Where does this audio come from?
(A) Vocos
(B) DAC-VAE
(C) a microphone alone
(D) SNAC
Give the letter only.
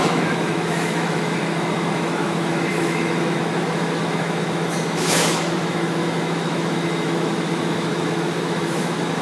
B